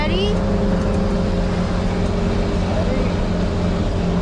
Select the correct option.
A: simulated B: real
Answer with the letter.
B